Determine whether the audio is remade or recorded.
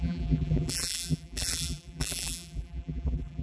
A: remade